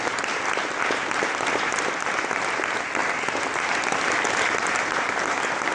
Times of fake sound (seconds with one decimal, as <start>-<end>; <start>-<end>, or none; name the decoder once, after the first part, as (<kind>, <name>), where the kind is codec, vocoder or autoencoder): none